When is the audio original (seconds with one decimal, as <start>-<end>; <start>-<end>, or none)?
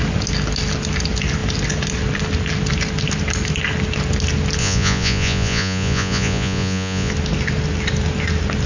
0.0-4.6; 7.1-8.7